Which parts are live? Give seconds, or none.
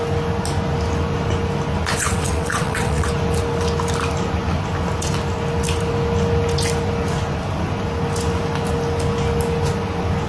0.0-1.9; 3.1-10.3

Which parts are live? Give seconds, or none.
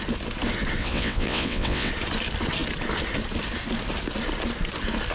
0.0-0.8; 1.9-5.1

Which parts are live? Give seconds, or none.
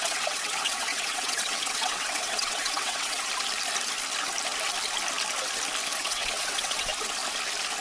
3.3-6.0; 6.9-7.8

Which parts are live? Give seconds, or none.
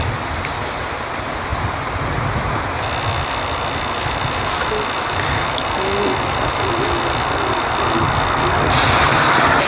0.0-9.7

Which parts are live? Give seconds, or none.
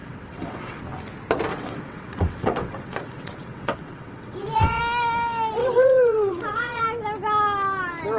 0.8-1.5; 4.8-5.6; 6.8-8.2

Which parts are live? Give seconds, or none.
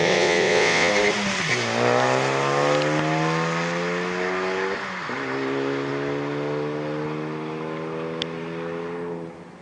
0.9-9.6